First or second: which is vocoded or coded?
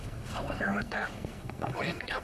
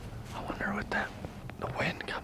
first